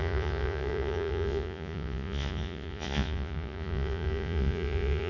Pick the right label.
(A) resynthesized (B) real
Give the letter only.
A